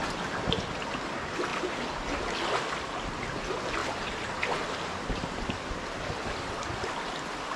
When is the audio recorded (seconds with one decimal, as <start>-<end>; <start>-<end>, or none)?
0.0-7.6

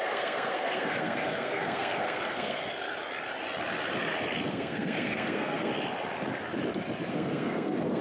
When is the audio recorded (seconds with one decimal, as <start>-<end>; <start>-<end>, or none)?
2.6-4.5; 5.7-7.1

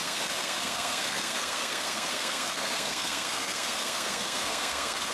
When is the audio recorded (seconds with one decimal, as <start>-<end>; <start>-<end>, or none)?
none